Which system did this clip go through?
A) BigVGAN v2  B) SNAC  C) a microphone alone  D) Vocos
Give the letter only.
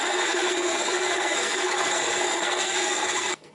B